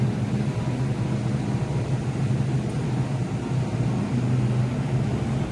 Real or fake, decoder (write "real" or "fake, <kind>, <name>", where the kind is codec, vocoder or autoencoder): real